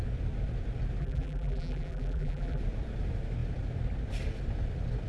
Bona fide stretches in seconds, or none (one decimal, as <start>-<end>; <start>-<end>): 0.0-1.0; 2.6-5.1